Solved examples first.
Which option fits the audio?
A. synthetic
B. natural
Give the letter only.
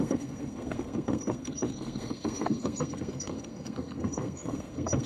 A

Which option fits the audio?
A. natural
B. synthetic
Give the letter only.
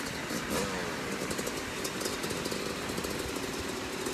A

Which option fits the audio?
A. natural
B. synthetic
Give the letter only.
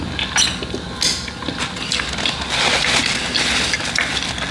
A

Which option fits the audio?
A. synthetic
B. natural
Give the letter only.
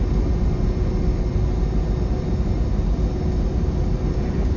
B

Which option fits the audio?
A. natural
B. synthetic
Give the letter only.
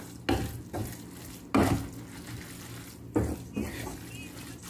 A